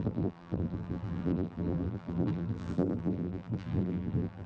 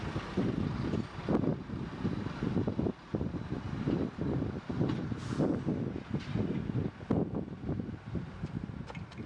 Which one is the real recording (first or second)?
second